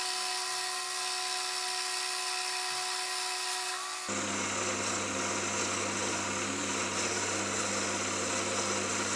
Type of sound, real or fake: real